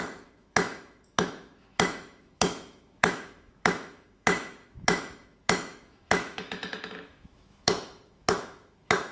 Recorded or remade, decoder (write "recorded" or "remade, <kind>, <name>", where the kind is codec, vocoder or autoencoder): remade, autoencoder, DAC-VAE